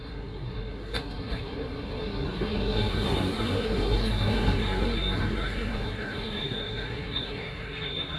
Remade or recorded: remade